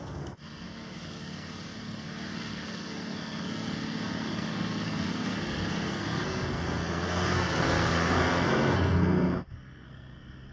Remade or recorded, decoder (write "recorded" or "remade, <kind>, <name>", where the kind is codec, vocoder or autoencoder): remade, codec, SNAC